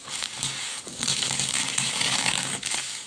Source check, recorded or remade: remade